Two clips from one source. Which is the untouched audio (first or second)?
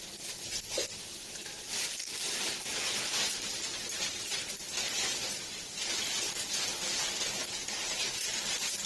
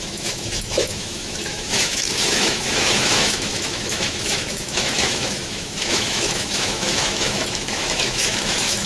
first